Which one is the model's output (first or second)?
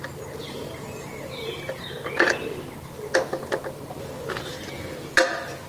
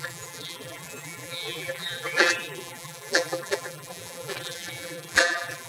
second